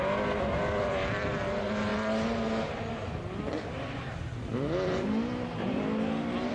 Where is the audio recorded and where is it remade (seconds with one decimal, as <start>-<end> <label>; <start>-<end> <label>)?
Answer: 0.0-6.5 recorded